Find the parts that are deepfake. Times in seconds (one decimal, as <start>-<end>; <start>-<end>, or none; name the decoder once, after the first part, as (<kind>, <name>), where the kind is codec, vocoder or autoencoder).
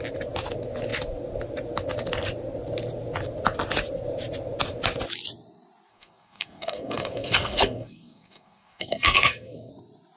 5.9-9.7 (codec, SNAC)